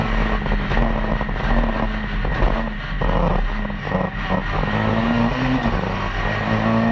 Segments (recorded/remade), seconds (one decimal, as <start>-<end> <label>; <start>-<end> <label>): 0.0-6.9 recorded